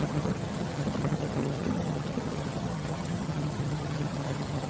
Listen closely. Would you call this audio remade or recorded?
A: remade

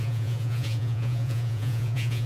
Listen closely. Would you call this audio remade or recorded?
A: remade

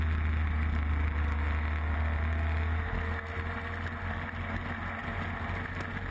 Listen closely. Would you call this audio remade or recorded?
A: recorded